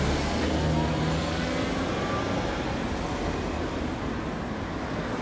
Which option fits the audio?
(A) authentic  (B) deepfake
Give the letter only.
A